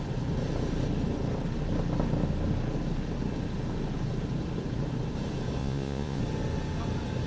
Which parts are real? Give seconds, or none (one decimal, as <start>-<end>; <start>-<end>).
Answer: 0.0-5.6; 6.2-7.3